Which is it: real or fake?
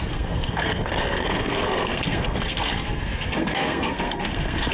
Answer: fake